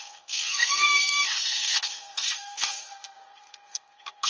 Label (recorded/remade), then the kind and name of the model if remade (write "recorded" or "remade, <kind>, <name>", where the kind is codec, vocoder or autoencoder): remade, codec, SNAC